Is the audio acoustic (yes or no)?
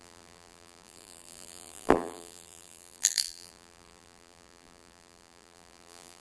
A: no